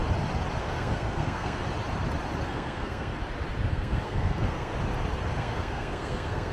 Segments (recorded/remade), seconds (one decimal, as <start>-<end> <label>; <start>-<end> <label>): 0.0-0.6 recorded; 0.6-1.6 remade; 1.6-2.4 recorded; 2.4-3.1 remade; 3.1-3.7 recorded; 3.7-4.7 remade; 4.7-5.3 recorded; 5.3-6.5 remade